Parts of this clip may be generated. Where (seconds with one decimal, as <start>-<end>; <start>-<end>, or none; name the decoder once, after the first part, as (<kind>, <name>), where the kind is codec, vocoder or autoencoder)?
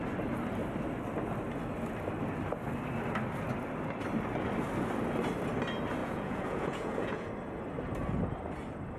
6.0-7.3 (vocoder, Vocos)